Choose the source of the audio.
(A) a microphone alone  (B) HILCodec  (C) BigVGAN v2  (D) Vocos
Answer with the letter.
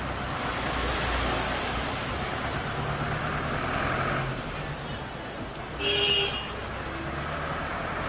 A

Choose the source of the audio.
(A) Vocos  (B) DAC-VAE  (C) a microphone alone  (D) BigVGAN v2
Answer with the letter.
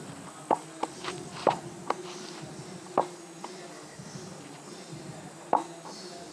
C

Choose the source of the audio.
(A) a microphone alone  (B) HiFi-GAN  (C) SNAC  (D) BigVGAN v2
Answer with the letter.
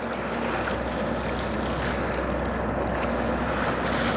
A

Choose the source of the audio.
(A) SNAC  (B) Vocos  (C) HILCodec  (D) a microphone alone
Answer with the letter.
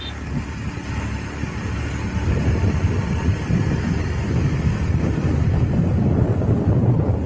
D